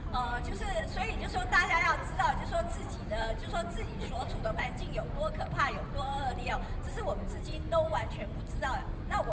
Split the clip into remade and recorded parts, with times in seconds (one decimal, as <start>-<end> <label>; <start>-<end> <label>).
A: 0.0-9.3 recorded